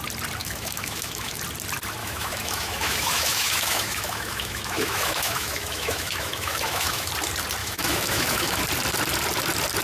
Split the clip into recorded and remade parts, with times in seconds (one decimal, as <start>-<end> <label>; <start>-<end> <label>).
0.0-0.4 recorded; 0.4-1.4 remade; 1.4-2.0 recorded; 2.0-7.1 remade; 7.1-7.6 recorded; 7.6-8.6 remade; 8.6-9.8 recorded